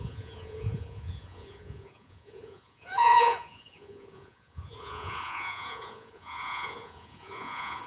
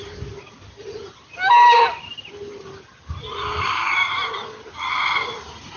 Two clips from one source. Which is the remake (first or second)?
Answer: first